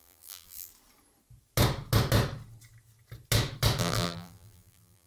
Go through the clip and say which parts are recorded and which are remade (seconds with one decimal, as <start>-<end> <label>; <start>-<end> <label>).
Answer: 0.0-0.7 remade; 0.7-3.8 recorded; 3.8-5.1 remade